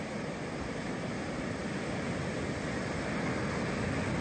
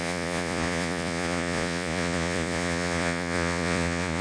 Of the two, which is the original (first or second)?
first